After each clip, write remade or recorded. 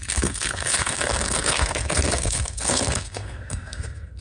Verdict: remade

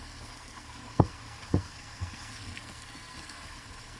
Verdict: remade